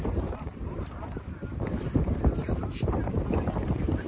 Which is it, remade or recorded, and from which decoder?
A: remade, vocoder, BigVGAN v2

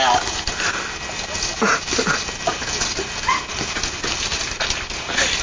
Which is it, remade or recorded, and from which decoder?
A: recorded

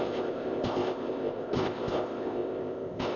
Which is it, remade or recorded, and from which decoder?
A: remade, codec, ZipCodec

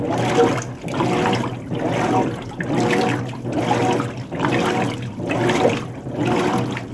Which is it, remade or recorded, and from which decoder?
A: recorded